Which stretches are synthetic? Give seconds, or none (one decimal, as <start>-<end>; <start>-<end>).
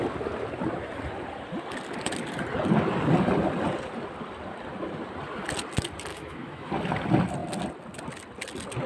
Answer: 6.1-6.7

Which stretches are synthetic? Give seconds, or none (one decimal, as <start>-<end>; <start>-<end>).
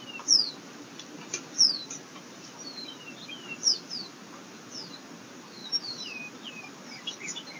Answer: 1.8-2.9; 5.6-6.3